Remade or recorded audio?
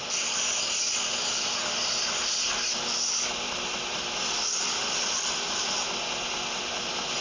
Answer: recorded